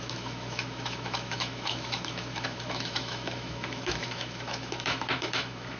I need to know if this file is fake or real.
fake